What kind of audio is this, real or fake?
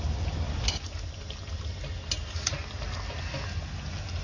real